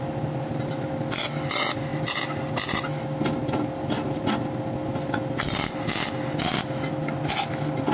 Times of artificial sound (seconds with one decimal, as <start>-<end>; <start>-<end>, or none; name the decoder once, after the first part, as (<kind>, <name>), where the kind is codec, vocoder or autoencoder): none